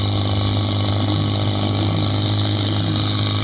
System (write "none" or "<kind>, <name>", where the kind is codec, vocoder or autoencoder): none